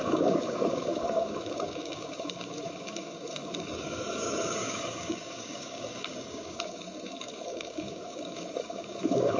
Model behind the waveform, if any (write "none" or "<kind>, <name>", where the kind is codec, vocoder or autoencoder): codec, DAC